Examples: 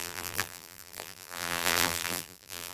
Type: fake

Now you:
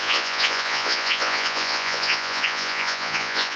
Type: fake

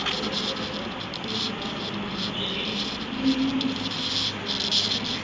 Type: real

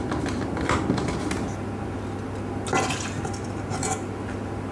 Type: real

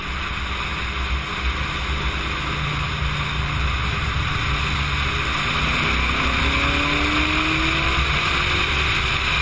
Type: real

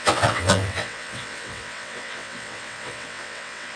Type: fake